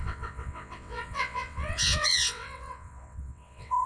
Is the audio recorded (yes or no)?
no